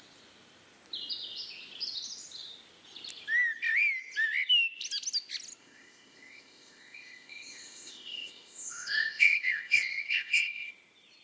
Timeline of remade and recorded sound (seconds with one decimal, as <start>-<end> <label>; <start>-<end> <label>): 0.0-5.6 recorded; 5.6-10.7 remade; 10.7-11.2 recorded

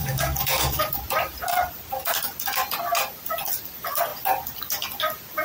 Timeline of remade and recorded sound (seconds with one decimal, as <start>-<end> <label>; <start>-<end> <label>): 0.0-0.9 remade; 0.9-5.4 recorded

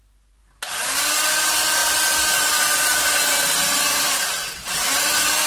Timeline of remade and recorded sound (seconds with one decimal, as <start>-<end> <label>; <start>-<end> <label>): 0.0-0.4 recorded; 0.4-1.0 remade; 1.0-1.8 recorded; 1.8-5.1 remade; 5.1-5.5 recorded

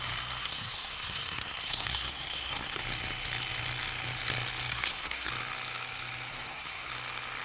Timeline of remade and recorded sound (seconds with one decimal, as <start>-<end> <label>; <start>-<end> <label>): 0.0-0.4 recorded; 0.4-2.8 remade; 2.8-4.7 recorded; 4.7-5.3 remade; 5.3-6.3 recorded; 6.3-6.9 remade; 6.9-7.4 recorded

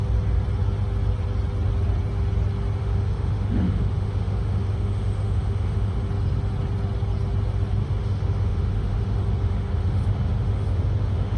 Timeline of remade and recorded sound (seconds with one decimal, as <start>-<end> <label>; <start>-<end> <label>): 0.0-2.8 recorded; 2.8-6.0 remade; 6.0-7.8 recorded; 7.8-11.4 remade